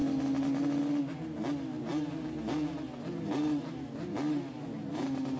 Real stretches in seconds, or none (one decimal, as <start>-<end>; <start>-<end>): 0.0-5.4